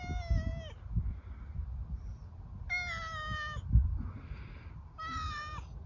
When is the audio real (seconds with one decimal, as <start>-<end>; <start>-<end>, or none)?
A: 0.0-5.9